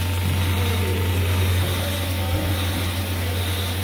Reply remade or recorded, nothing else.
recorded